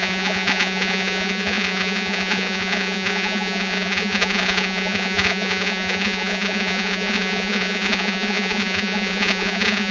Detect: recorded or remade remade